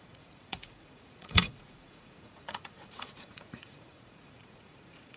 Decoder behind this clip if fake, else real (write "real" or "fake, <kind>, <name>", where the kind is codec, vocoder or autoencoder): fake, vocoder, Vocos